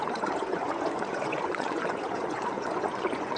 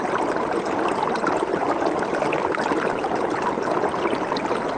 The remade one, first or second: first